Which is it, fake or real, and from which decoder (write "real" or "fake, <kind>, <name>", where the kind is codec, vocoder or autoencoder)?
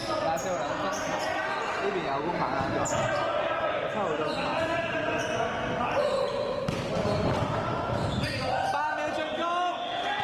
real